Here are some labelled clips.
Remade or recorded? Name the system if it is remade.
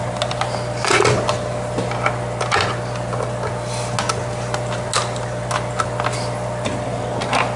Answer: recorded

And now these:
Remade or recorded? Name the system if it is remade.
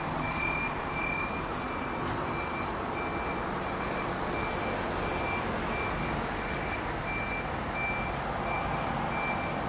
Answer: recorded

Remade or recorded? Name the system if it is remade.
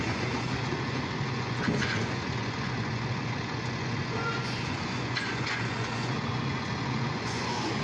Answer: remade, vocoder, Vocos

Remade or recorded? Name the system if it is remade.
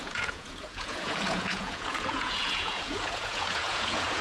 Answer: remade, vocoder, Vocos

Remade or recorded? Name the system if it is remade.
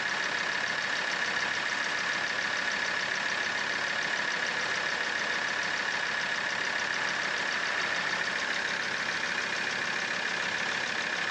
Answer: recorded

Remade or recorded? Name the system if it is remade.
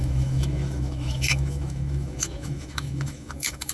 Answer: remade, autoencoder, DAC-VAE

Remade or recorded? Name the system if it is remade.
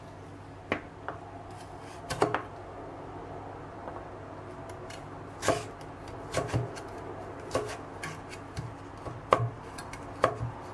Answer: recorded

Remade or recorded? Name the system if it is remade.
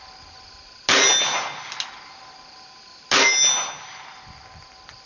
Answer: recorded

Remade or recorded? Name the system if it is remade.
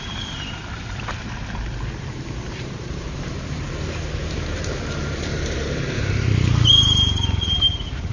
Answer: remade, vocoder, BigVGAN v2